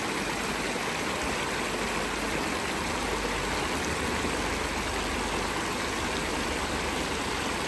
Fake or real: real